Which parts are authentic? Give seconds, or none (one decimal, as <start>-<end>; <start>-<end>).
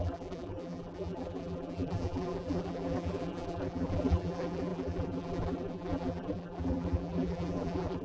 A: none